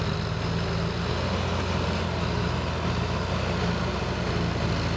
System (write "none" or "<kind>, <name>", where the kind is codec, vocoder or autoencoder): none